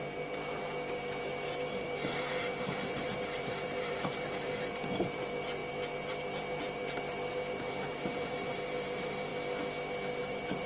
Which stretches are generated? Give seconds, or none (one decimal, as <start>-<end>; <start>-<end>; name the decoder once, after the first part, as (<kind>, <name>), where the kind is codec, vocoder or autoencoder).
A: 0.0-9.3 (vocoder, BigVGAN v2); 10.2-10.7